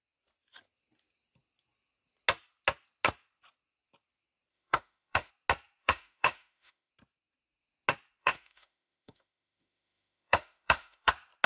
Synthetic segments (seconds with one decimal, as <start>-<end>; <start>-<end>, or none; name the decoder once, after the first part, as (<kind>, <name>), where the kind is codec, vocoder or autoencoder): 4.5-5.3 (autoencoder, DAC-VAE); 5.8-6.9; 8.2-11.1